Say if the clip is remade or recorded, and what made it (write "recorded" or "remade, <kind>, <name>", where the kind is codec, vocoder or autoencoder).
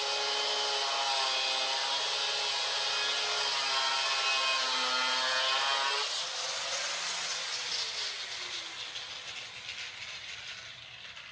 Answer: recorded